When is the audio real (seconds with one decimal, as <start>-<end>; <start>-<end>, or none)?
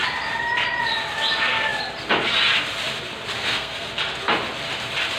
0.0-3.4; 3.9-5.2